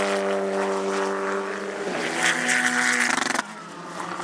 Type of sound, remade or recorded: recorded